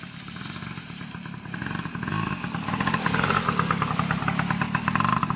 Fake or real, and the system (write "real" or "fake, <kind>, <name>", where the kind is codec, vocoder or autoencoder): real